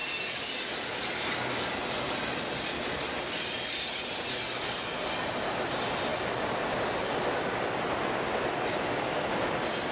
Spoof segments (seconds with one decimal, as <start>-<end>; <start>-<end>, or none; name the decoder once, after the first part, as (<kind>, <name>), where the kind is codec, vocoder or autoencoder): none